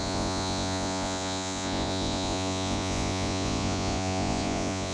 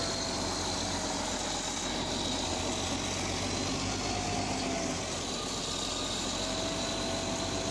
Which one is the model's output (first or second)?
first